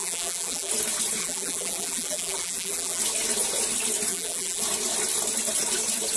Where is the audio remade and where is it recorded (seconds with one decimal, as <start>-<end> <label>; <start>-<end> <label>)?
0.0-0.7 remade; 0.7-1.2 recorded; 1.2-3.0 remade; 3.0-4.1 recorded; 4.1-4.6 remade; 4.6-6.2 recorded